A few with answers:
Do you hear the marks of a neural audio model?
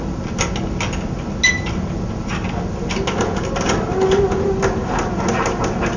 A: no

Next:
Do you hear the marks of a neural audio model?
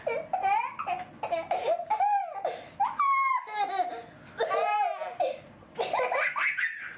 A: no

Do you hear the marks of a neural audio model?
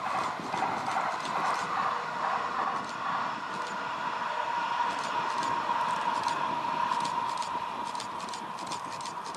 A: no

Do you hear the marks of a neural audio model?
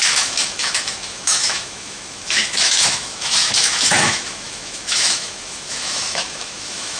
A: yes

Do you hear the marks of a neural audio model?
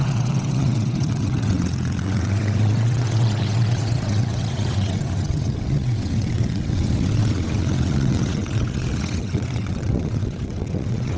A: yes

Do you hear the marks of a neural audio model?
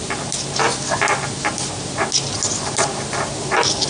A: no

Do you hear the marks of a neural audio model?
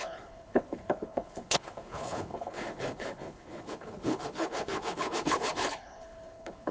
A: yes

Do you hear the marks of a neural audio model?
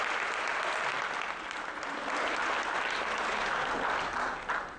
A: no